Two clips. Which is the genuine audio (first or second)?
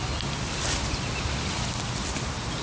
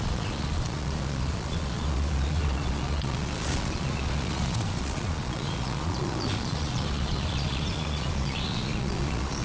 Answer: first